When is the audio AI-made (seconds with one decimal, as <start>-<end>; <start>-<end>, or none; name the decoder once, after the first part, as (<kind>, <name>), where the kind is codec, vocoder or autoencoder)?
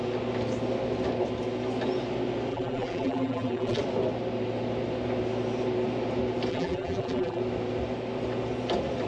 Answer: 2.5-3.8 (vocoder, BigVGAN v2); 6.5-7.4